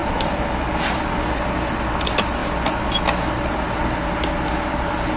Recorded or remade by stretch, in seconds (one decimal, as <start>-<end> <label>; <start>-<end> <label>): 0.0-1.2 remade; 1.2-5.2 recorded